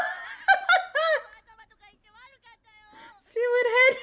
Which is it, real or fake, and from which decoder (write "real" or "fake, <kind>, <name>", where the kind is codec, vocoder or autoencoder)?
real